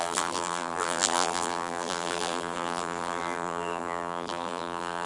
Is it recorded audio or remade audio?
remade